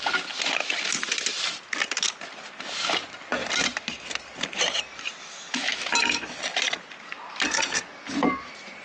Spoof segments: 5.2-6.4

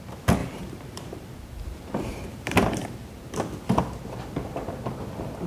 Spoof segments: 0.4-3.7

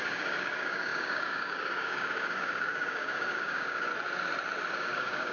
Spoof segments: 0.0-3.9; 4.7-5.3

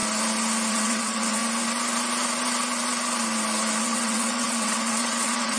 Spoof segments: 0.7-1.4; 3.8-5.6

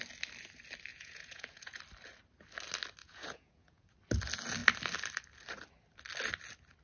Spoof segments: 0.9-1.8; 3.0-3.9

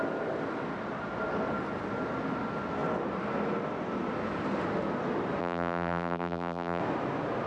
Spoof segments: 5.4-6.8

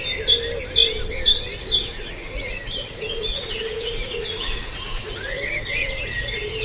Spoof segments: 1.9-5.9